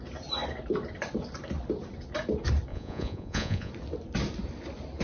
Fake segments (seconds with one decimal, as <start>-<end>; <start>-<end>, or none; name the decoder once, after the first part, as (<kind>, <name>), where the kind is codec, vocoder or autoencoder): 2.7-3.7 (vocoder, Vocos)